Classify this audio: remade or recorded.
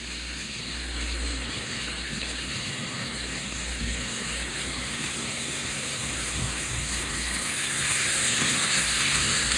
remade